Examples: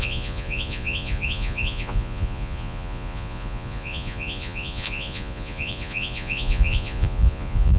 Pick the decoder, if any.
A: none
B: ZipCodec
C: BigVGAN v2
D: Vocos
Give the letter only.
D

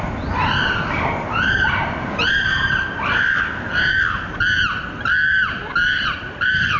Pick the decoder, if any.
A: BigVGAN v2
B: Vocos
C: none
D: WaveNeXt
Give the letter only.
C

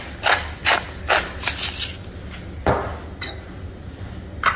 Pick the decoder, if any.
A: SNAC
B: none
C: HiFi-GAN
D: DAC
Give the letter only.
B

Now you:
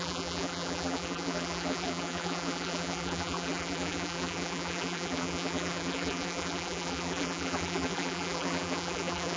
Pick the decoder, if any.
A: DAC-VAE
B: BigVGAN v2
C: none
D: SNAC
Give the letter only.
B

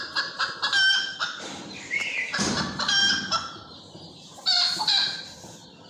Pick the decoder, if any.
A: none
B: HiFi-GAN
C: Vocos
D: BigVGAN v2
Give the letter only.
D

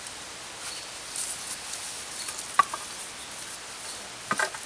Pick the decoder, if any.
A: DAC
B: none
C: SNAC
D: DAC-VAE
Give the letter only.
B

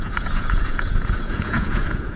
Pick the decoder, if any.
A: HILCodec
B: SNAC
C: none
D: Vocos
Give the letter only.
D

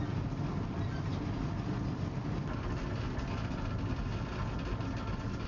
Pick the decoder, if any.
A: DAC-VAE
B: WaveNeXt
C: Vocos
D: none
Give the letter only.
D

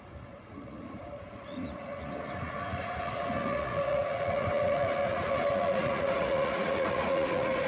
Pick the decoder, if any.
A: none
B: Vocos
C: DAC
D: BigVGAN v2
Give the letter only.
B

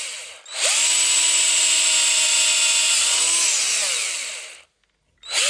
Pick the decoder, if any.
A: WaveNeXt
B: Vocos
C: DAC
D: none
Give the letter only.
D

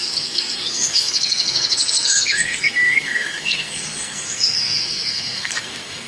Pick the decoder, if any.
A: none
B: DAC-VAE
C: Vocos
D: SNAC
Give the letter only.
D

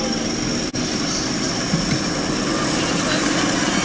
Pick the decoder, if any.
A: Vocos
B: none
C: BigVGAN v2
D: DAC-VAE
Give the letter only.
B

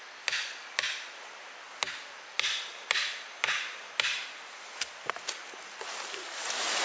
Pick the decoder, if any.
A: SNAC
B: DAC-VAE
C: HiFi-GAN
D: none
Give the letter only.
D